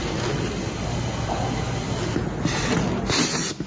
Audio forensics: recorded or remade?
recorded